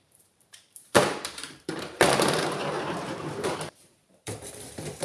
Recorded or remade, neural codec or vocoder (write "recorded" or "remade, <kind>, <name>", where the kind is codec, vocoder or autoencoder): remade, vocoder, BigVGAN v2